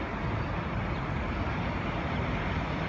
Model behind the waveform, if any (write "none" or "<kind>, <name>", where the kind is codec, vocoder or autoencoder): none